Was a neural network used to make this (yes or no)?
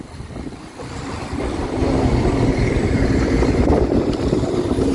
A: no